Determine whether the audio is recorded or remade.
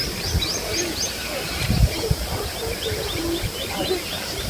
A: recorded